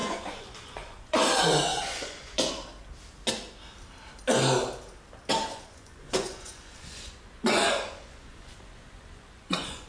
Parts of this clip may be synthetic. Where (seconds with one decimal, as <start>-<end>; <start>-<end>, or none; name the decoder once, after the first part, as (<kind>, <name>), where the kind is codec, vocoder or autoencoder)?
0.0-1.2 (vocoder, Vocos); 1.7-2.5; 5.5-9.9